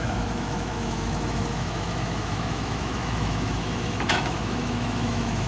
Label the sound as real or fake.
fake